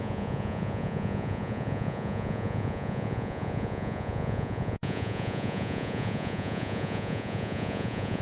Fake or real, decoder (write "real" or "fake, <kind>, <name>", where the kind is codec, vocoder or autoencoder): fake, vocoder, Vocos